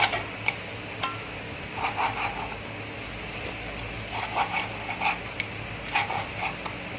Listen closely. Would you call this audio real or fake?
real